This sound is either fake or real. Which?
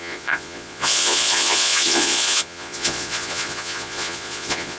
fake